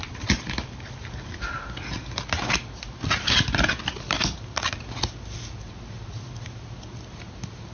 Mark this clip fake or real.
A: real